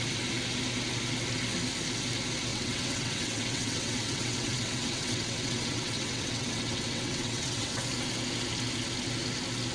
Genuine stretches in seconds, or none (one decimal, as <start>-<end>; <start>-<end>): 0.0-2.5; 7.8-9.7